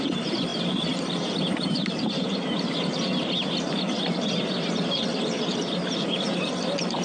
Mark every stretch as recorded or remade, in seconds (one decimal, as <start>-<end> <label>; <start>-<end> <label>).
0.0-7.0 remade